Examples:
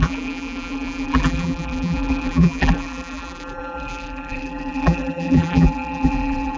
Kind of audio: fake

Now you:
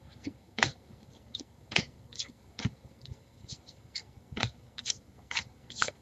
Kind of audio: fake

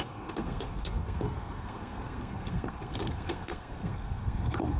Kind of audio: fake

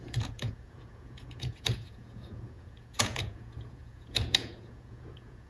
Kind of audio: fake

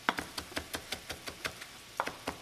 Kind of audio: real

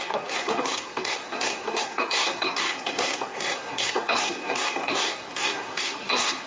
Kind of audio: fake